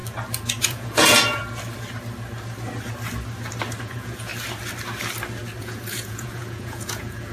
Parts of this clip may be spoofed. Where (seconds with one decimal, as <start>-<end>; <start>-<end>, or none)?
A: 0.6-1.4; 3.8-4.3; 5.6-7.3